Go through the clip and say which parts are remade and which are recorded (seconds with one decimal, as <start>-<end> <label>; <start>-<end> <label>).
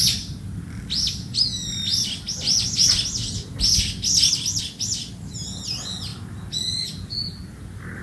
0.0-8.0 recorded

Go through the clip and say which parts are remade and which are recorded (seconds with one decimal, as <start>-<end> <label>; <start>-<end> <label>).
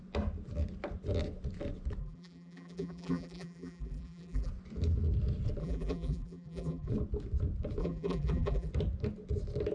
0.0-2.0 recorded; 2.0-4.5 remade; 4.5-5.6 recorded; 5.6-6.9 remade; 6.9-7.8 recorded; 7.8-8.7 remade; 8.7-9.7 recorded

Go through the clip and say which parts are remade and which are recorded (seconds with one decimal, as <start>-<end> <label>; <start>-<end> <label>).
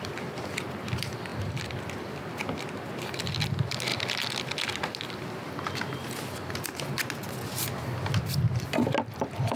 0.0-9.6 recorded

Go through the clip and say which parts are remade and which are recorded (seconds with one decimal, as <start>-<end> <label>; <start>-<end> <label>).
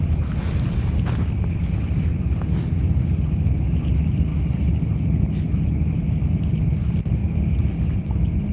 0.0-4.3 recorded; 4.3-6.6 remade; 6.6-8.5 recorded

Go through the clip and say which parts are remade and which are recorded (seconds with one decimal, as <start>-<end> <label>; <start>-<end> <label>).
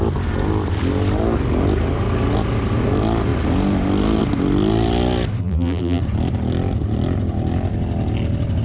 0.0-5.4 recorded; 5.4-6.0 remade; 6.0-8.6 recorded